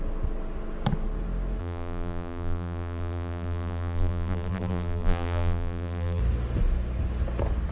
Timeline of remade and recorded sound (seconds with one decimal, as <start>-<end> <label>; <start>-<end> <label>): 0.0-1.6 recorded; 1.6-6.2 remade; 6.2-7.7 recorded

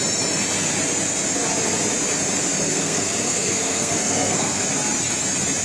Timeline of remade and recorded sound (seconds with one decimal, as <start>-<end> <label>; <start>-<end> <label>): 0.0-2.7 recorded; 2.7-4.6 remade; 4.6-5.6 recorded

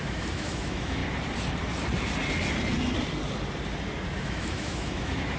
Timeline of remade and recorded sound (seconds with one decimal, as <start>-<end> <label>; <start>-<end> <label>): 0.0-1.0 remade; 1.0-4.2 recorded; 4.2-5.4 remade